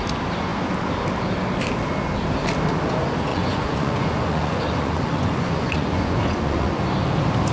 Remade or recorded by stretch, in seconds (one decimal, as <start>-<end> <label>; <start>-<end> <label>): 0.0-3.3 recorded; 3.3-6.7 remade; 6.7-7.5 recorded